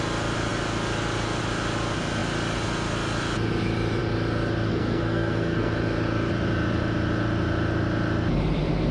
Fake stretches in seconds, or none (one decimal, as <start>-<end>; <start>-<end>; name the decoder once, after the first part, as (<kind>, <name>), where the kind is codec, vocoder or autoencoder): 4.7-5.7 (codec, SNAC)